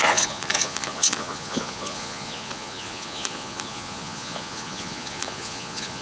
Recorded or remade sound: remade